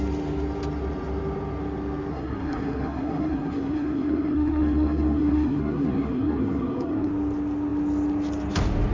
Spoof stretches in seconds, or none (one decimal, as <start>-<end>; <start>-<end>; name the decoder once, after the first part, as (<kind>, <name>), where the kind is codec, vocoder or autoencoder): 2.1-7.1 (codec, SNAC)